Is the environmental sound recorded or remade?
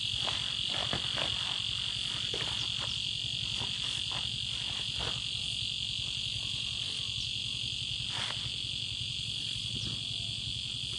recorded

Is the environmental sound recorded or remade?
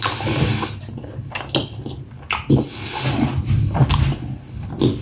recorded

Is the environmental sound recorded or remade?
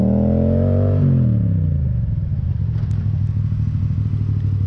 recorded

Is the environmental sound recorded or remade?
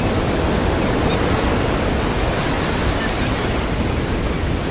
recorded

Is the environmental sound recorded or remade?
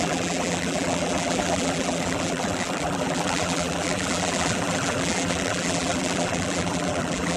remade